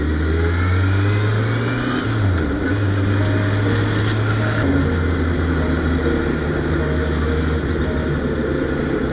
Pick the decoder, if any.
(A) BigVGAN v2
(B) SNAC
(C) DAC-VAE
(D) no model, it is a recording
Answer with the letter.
D